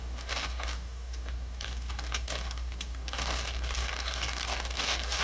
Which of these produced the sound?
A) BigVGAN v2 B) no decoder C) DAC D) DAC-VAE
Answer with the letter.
C